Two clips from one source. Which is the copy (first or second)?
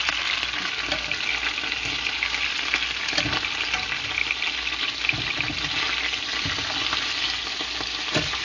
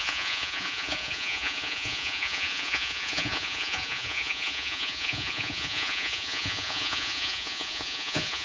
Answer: second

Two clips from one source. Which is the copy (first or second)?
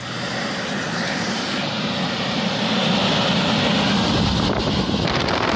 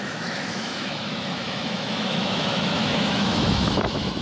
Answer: second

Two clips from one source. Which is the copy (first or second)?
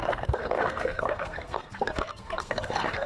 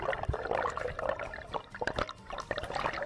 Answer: first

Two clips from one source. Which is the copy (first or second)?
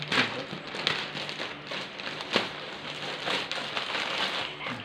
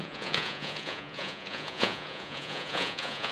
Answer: second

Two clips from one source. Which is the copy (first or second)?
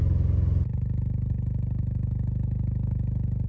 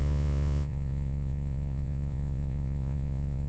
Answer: second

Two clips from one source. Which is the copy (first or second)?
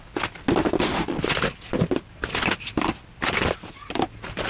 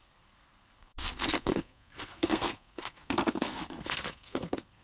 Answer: second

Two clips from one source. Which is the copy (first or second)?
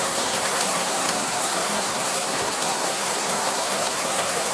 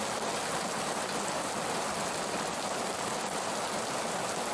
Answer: first